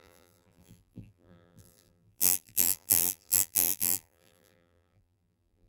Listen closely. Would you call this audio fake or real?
fake